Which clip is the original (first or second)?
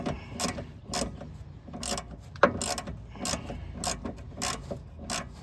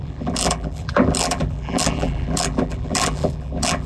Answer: first